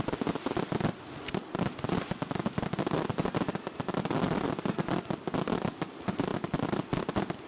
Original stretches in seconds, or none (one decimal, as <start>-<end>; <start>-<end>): 0.0-7.5